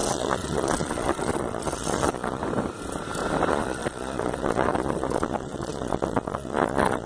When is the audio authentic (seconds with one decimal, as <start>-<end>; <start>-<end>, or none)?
2.4-3.5

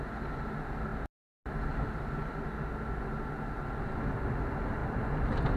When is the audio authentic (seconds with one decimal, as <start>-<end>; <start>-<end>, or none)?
0.0-4.8

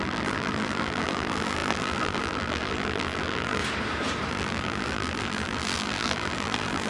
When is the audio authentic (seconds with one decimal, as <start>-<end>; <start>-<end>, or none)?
3.6-4.3

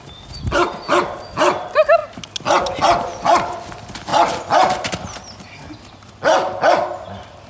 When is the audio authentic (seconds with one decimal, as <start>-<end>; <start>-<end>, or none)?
0.0-7.5

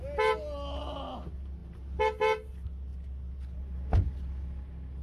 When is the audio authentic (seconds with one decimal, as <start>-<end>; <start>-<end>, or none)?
0.0-5.0